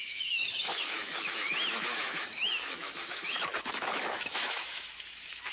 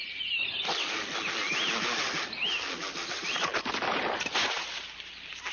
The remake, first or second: first